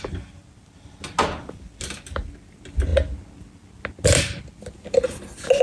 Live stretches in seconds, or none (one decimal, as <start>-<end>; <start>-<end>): 0.0-5.6